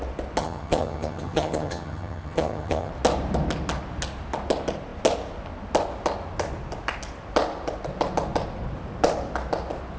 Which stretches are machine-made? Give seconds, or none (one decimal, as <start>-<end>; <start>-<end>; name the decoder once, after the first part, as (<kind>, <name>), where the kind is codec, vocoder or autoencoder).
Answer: 0.4-2.9 (vocoder, HiFi-GAN)